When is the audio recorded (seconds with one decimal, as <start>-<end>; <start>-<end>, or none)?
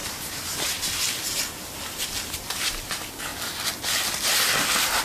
2.9-5.0